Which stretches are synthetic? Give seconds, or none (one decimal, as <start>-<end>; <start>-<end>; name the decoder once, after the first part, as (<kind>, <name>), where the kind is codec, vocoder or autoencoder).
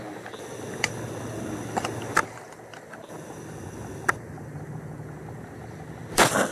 0.0-6.5 (vocoder, BigVGAN v2)